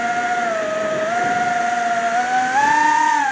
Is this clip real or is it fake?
real